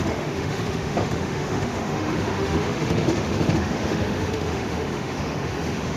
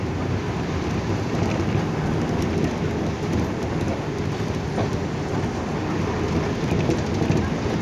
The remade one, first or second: first